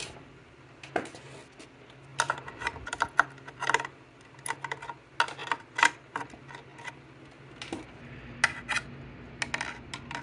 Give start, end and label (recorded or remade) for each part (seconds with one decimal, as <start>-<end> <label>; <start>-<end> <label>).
0.0-2.1 recorded; 2.1-3.6 remade; 3.6-5.4 recorded; 5.4-6.2 remade; 6.2-10.2 recorded

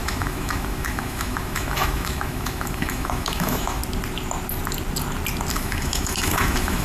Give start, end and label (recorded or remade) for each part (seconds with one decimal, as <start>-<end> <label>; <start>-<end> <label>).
0.0-3.8 remade; 3.8-5.5 recorded; 5.5-6.8 remade

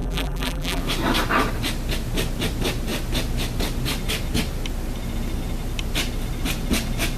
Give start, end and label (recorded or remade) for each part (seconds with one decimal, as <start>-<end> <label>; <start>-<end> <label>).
0.0-0.8 remade; 0.8-7.2 recorded

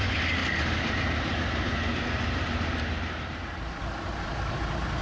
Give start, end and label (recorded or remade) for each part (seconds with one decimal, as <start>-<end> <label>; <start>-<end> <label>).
0.0-0.4 recorded; 0.4-3.4 remade; 3.4-5.0 recorded

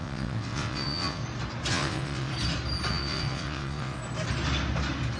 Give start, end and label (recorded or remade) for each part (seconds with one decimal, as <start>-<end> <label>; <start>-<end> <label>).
0.0-1.2 remade; 1.2-1.7 recorded; 1.7-2.3 remade; 2.3-2.9 recorded; 2.9-4.0 remade; 4.0-5.2 recorded